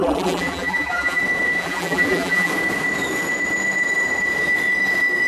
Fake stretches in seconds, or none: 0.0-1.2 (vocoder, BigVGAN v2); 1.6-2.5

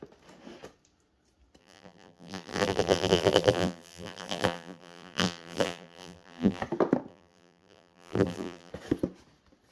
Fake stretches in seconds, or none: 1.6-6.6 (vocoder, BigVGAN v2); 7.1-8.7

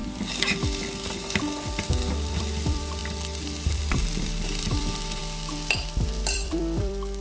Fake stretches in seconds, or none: 0.0-7.2 (vocoder, BigVGAN v2)

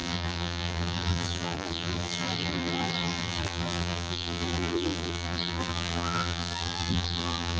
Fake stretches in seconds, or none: 0.0-7.6 (vocoder, BigVGAN v2)

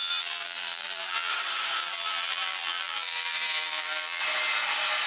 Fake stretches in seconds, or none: 0.0-1.3 (vocoder, BigVGAN v2); 1.8-4.2